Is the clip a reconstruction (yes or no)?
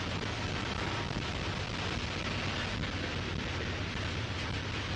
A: no